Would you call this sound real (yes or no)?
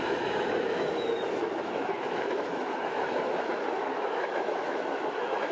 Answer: no